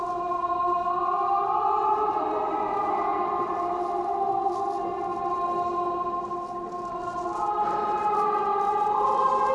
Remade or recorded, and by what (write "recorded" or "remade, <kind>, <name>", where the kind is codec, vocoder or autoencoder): recorded